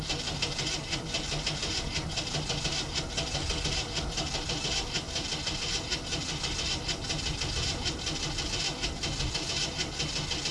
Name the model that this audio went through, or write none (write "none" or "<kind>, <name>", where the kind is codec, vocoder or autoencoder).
none